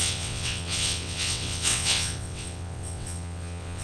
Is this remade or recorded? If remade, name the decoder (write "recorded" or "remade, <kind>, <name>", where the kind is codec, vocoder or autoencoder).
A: remade, vocoder, WaveNeXt